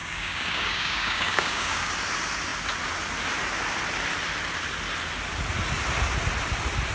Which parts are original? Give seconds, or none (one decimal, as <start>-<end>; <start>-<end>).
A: 1.9-6.9